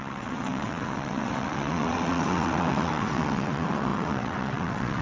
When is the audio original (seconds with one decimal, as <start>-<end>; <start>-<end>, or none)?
none